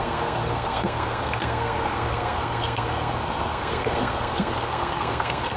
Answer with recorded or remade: remade